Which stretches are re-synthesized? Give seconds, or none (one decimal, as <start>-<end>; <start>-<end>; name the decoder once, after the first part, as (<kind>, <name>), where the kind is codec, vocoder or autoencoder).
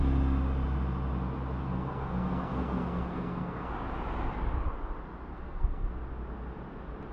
1.6-3.7 (codec, SNAC); 5.3-5.9